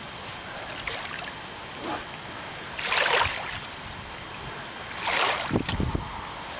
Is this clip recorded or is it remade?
recorded